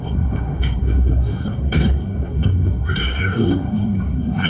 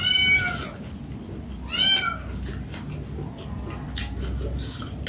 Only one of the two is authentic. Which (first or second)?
second